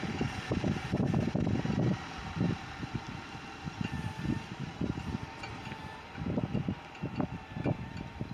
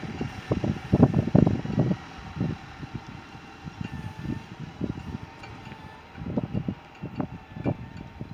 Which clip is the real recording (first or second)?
second